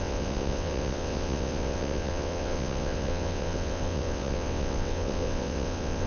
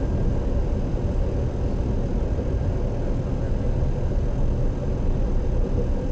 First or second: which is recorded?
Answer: second